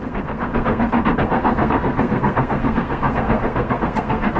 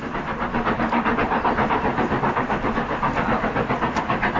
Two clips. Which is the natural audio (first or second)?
second